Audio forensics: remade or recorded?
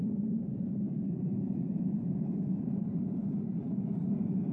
remade